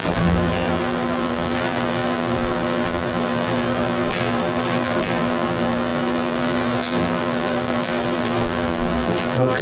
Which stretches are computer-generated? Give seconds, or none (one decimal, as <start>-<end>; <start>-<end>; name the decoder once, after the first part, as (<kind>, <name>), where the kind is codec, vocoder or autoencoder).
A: 0.0-9.6 (vocoder, BigVGAN v2)